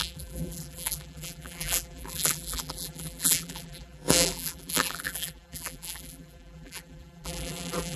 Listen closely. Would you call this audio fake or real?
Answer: fake